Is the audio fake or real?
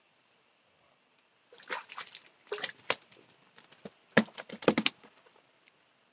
real